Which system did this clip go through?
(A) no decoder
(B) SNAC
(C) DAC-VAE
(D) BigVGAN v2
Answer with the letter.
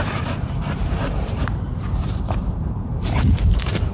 D